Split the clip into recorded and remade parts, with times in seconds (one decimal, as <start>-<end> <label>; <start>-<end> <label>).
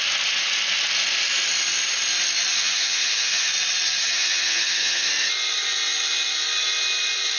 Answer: 0.0-2.5 recorded; 2.5-3.5 remade; 3.5-4.0 recorded; 4.0-5.1 remade; 5.1-7.4 recorded